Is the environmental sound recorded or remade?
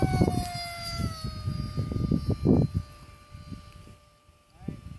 recorded